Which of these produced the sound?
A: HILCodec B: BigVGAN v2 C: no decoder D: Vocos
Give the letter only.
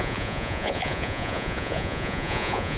D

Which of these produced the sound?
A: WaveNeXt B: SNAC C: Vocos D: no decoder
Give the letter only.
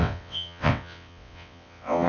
A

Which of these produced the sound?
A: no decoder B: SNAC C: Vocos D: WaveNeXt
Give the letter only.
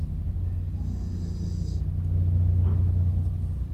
A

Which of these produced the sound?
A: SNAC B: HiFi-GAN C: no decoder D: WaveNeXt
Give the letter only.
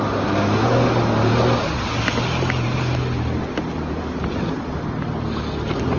C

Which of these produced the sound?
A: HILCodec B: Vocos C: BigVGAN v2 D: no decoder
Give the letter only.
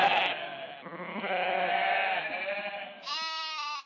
D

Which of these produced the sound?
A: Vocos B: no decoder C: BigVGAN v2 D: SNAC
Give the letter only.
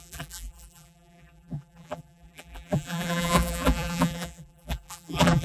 C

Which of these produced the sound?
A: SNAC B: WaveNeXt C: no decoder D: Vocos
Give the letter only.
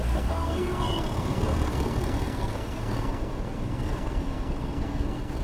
A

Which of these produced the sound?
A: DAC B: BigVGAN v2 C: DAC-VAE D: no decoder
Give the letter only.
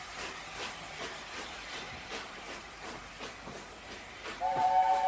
B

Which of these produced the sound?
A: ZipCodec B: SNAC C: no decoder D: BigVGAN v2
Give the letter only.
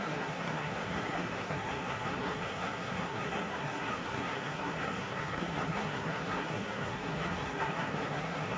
B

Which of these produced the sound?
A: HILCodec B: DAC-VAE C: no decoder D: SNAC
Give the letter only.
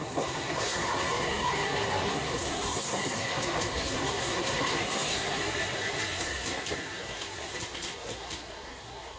D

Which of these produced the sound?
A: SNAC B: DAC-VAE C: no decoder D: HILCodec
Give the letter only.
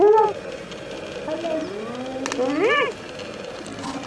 C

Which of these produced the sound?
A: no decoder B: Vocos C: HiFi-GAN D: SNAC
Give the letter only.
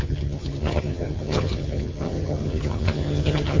C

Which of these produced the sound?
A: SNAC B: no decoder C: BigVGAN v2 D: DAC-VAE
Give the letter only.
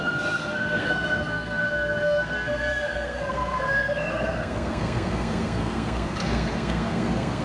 A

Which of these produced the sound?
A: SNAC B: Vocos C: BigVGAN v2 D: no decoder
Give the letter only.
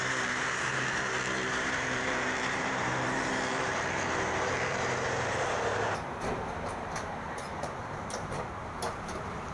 C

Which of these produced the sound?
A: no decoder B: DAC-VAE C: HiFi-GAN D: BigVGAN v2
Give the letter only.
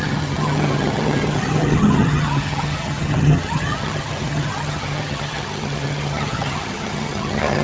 C